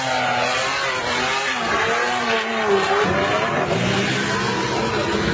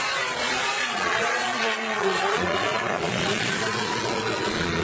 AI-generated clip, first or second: second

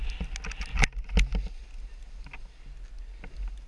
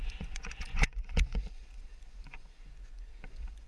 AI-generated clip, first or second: second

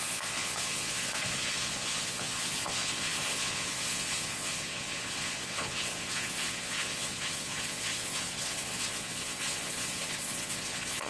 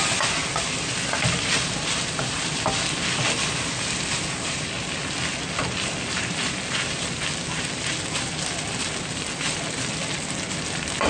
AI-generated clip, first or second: first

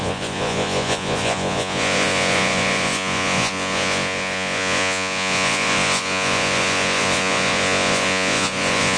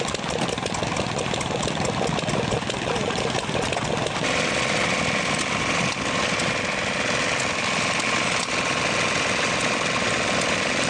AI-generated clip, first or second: first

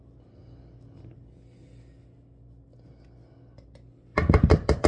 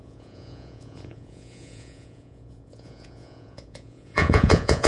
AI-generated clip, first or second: second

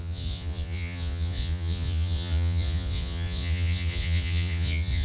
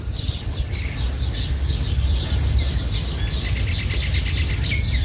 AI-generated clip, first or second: first